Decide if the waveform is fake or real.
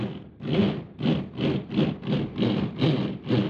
real